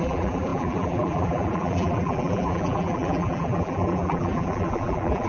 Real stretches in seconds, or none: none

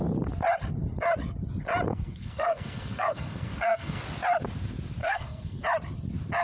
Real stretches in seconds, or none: 0.0-1.9; 4.0-5.0; 5.6-6.4

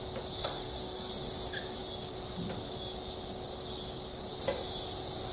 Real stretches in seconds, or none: 0.0-0.4; 1.1-5.3

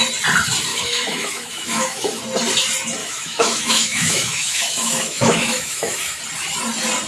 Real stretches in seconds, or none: 0.0-0.7; 2.2-3.0; 6.2-7.1

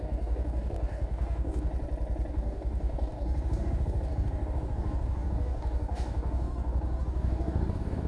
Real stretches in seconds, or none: 1.7-2.3

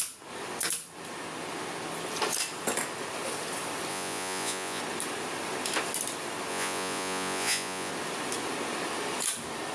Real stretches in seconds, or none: 0.0-3.9; 4.8-6.5; 7.9-9.7

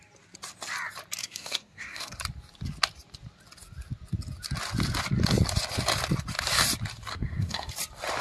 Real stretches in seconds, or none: 0.0-1.2; 2.2-7.1; 7.7-8.2